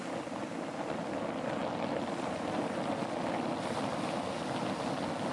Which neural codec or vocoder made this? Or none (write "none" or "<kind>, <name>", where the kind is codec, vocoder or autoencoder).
none